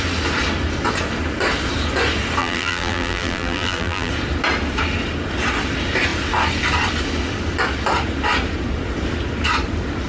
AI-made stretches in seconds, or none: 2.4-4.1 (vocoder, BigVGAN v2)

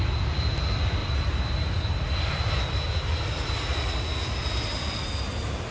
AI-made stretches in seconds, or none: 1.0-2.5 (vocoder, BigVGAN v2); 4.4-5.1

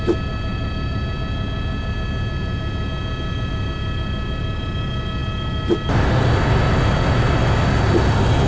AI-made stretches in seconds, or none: 0.5-1.1 (vocoder, BigVGAN v2)